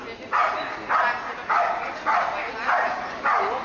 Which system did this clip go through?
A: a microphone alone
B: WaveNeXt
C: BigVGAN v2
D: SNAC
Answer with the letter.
A